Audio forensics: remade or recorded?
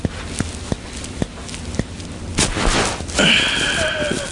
recorded